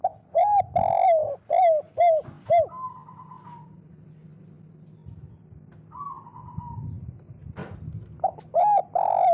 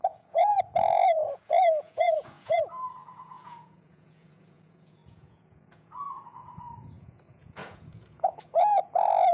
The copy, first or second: second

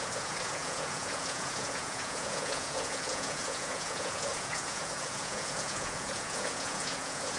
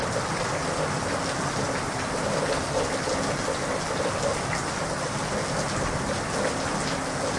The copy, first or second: first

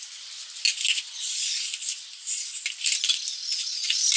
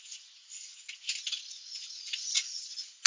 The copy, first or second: second